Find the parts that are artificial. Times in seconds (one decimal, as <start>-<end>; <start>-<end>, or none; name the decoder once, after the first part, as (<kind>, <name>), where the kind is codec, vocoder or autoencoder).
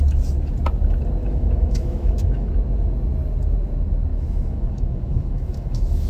1.2-2.5 (autoencoder, DAC-VAE); 4.1-6.1